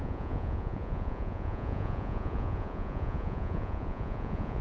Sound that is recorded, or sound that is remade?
remade